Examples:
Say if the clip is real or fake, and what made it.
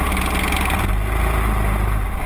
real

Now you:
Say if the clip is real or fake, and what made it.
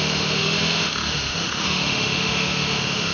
fake, autoencoder, DAC-VAE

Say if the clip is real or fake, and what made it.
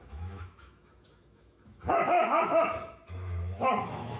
fake, autoencoder, DAC-VAE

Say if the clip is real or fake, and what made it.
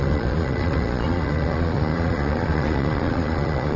fake, vocoder, Vocos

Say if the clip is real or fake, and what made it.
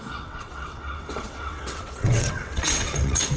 fake, vocoder, WaveNeXt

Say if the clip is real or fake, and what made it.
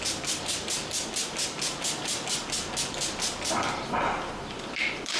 fake, vocoder, BigVGAN v2